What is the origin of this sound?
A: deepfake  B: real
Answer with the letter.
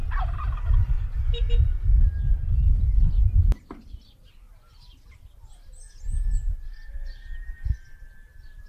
B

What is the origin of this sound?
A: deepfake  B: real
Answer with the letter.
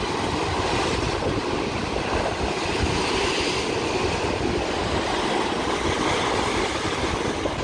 B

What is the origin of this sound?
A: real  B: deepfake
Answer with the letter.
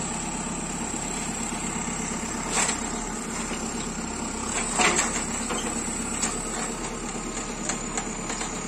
A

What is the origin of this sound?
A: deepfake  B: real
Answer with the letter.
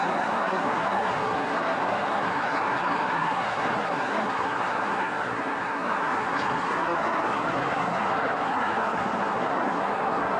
A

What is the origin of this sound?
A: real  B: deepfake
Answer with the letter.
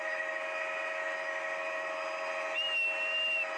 A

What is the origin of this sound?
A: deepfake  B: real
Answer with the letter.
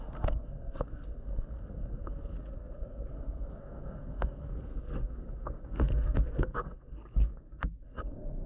A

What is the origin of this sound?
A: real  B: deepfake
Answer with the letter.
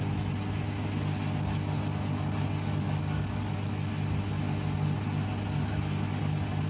A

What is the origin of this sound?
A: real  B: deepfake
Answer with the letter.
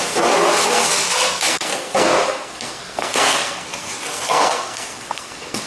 B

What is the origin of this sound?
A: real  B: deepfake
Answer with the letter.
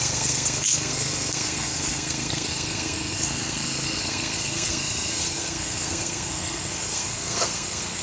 B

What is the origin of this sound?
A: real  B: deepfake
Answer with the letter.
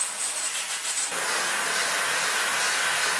A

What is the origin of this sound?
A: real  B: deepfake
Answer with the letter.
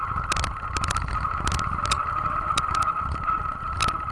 A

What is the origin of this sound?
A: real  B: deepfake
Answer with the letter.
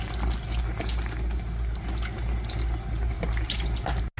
A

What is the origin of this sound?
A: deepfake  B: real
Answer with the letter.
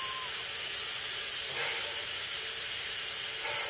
B